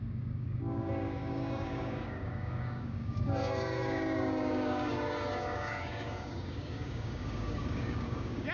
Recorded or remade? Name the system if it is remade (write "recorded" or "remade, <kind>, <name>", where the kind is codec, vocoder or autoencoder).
remade, codec, DAC